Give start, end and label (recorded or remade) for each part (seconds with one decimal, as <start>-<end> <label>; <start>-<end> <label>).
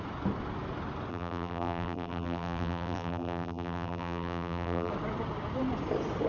0.0-1.1 recorded; 1.1-4.9 remade; 4.9-6.3 recorded